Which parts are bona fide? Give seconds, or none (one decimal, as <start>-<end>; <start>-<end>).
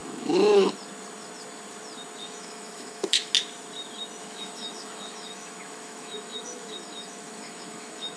0.7-2.2; 3.3-4.2